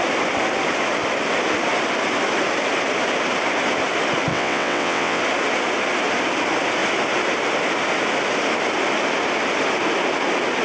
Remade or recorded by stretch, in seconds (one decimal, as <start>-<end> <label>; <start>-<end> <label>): 0.0-4.3 recorded; 4.3-5.2 remade; 5.2-10.6 recorded